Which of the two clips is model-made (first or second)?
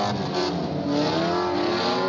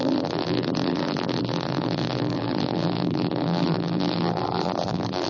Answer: second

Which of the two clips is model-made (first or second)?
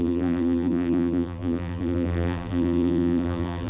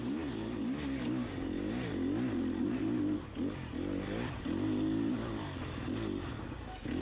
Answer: first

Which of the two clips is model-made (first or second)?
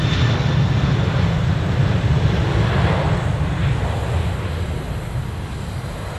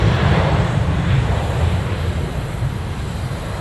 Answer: second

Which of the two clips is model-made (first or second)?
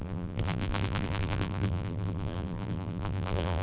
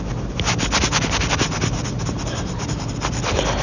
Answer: first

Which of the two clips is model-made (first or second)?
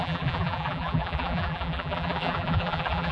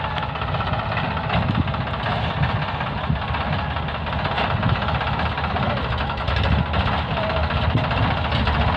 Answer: first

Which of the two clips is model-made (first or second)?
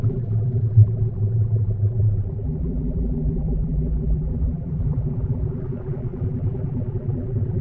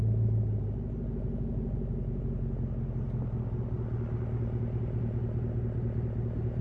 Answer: first